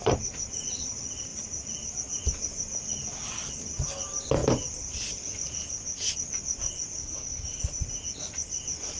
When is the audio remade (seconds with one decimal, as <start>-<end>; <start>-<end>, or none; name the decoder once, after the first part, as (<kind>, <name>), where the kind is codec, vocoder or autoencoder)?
7.0-7.6 (codec, DAC)